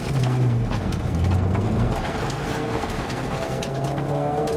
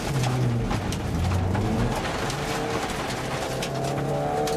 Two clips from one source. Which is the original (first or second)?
second